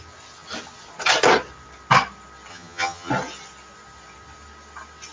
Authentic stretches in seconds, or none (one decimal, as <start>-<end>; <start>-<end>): 0.0-2.5; 3.1-5.1

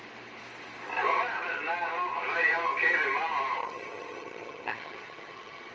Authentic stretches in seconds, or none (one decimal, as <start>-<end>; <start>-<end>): 0.0-3.6

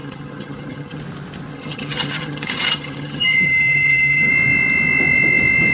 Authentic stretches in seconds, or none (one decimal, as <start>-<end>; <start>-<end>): 1.0-1.5; 4.3-5.7

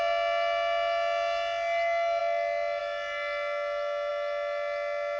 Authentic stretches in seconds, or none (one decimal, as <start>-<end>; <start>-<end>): 0.0-5.2

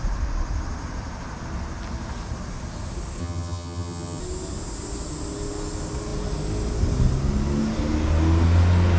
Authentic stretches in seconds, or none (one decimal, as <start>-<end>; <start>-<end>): 0.0-3.2; 4.2-9.0

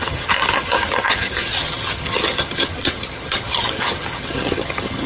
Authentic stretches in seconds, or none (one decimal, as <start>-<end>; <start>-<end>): none

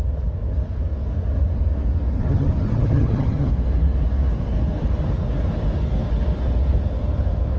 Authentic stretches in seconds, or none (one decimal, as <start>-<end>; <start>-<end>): 0.0-2.2; 3.5-7.6

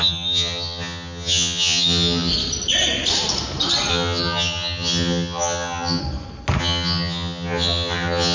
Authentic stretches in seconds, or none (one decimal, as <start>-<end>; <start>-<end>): 2.3-3.9; 6.0-6.6